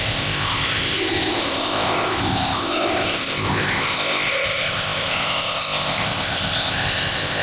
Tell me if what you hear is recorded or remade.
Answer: remade